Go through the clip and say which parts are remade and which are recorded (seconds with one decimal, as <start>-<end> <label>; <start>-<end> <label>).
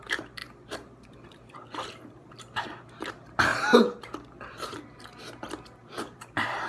0.0-6.7 recorded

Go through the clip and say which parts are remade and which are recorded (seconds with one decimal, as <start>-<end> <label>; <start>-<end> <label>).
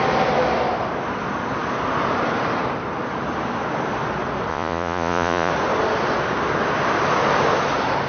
0.0-4.5 recorded; 4.5-5.5 remade; 5.5-8.1 recorded